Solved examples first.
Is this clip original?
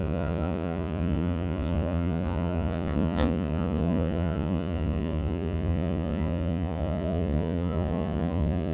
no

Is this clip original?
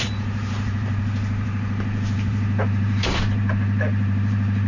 no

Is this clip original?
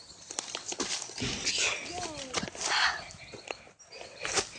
yes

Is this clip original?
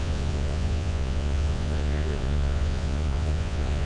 no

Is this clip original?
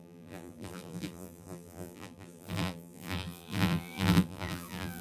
no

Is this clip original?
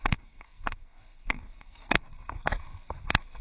no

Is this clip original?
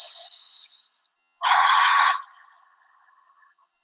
no